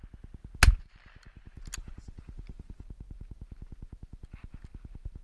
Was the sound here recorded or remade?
recorded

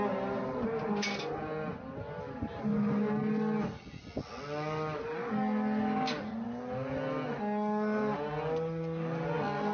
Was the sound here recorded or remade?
recorded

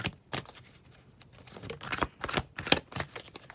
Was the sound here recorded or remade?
recorded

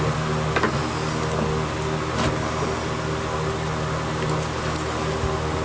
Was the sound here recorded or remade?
recorded